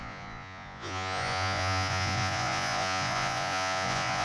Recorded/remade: remade